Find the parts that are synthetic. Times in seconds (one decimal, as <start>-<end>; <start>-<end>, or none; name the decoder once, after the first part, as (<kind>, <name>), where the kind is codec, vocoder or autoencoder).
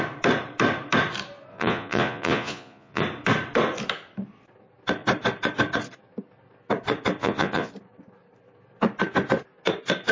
1.5-3.0 (vocoder, Vocos); 7.2-7.7